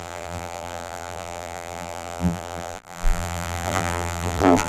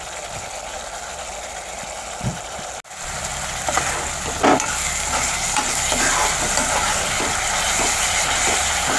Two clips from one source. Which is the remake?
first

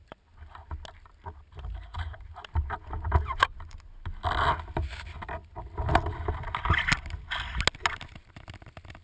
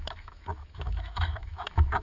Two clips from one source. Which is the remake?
second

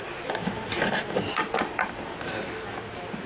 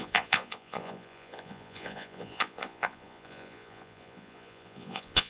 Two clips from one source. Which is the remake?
second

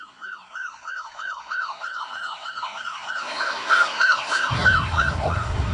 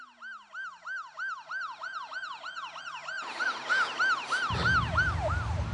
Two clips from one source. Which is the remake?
first